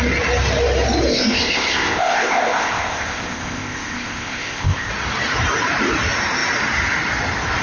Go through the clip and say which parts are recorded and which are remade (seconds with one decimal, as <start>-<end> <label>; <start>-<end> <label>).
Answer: 0.0-1.1 recorded; 1.1-4.9 remade; 4.9-7.6 recorded